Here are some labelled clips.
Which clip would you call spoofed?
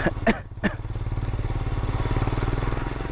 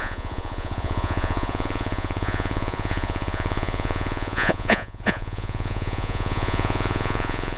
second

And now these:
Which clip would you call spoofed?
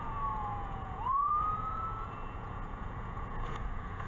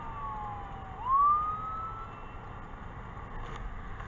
first